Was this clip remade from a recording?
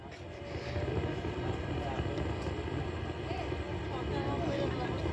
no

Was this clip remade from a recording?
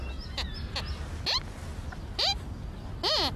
no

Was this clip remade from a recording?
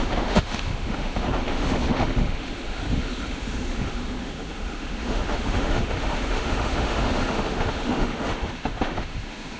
yes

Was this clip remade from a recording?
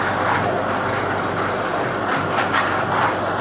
no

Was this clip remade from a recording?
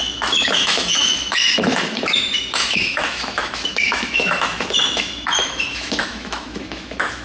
yes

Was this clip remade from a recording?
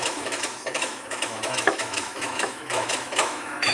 yes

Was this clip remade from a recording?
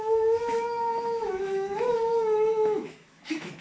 yes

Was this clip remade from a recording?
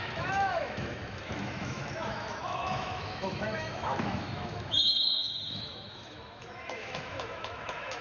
yes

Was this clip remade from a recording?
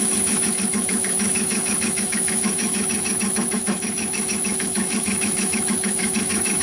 yes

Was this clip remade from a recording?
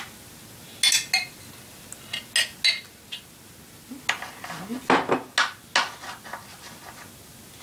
no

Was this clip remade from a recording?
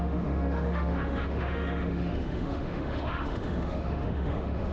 yes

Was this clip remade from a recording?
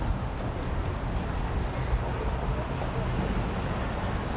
no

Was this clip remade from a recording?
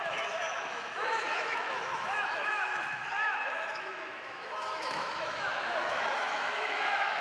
yes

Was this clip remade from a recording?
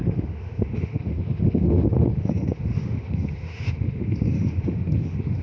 yes